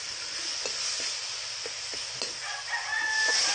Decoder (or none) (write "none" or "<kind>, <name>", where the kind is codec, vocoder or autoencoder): none